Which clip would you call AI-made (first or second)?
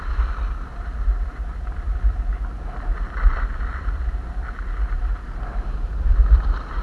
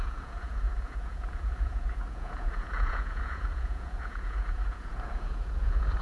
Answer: second